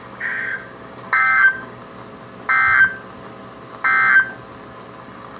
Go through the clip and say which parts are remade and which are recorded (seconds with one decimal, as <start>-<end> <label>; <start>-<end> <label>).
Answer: 0.0-1.8 remade; 1.8-5.0 recorded; 5.0-5.4 remade